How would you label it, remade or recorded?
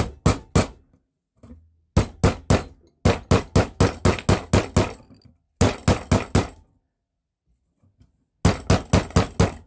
recorded